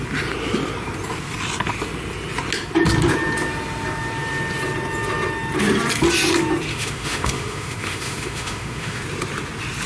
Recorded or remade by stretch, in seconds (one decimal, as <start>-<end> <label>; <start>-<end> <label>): 0.0-6.7 recorded; 6.7-9.0 remade; 9.0-9.9 recorded